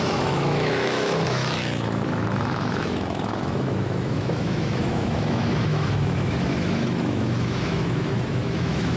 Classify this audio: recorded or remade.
remade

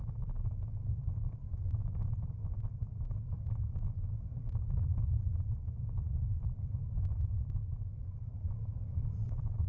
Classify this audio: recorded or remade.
recorded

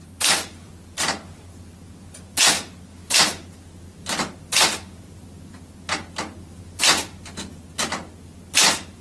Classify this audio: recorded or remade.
recorded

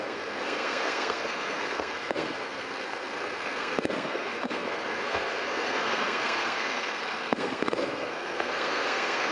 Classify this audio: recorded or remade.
remade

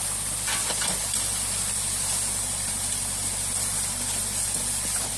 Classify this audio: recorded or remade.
recorded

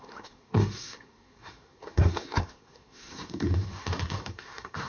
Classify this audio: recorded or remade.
remade